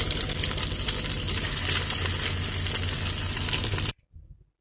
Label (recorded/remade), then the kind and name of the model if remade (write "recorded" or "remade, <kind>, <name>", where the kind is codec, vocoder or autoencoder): recorded